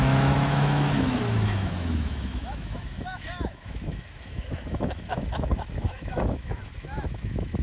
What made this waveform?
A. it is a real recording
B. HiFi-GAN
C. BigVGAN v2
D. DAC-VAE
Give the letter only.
D